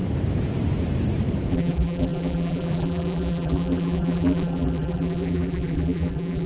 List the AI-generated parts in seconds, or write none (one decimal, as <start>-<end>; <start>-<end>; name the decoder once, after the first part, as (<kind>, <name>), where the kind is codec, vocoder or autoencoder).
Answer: 1.5-6.5 (vocoder, BigVGAN v2)